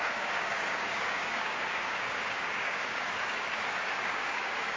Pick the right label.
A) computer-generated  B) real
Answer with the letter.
A